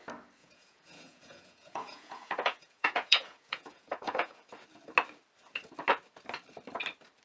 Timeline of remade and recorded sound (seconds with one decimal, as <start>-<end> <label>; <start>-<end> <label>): 0.0-0.4 recorded; 0.4-4.5 remade; 4.5-7.2 recorded

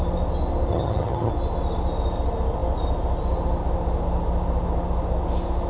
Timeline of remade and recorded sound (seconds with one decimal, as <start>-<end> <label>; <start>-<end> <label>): 0.0-0.7 recorded; 0.7-1.3 remade; 1.3-5.7 recorded

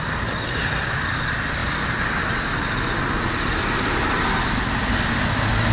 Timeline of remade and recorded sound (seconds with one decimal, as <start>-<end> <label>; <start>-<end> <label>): 0.0-5.7 recorded

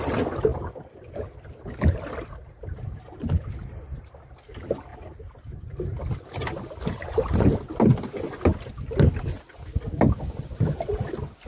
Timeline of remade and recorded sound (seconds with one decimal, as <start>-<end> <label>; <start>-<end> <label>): 0.0-11.5 recorded

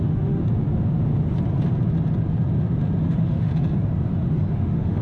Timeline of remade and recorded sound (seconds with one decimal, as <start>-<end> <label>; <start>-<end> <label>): 0.0-0.4 remade; 0.4-3.0 recorded; 3.0-3.5 remade; 3.5-4.5 recorded; 4.5-5.0 remade